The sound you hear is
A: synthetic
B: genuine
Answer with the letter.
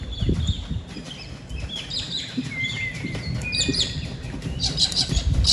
A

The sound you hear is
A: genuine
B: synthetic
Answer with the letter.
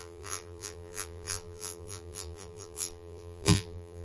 B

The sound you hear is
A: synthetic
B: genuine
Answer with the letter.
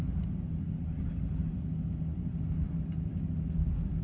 B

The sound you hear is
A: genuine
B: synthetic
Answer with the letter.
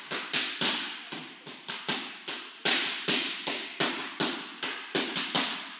A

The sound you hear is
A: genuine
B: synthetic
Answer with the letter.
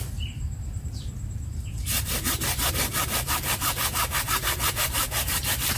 B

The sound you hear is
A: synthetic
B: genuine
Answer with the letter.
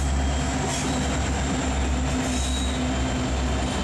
B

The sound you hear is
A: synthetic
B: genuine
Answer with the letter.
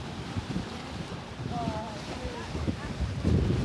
A